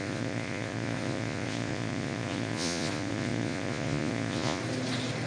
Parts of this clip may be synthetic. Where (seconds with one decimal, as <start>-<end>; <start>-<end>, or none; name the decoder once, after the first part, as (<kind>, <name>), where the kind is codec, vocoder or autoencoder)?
0.0-4.6 (vocoder, Vocos)